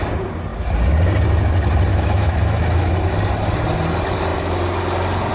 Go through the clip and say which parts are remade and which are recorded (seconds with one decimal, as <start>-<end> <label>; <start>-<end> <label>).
0.0-1.9 recorded; 1.9-2.9 remade; 2.9-5.3 recorded